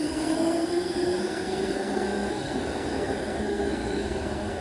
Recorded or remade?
remade